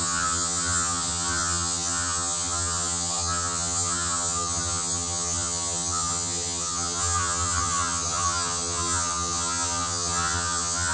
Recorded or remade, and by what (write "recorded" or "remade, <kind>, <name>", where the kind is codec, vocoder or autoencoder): remade, vocoder, HiFi-GAN